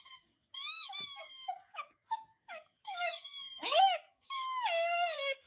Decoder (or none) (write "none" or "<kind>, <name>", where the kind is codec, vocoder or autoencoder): codec, DAC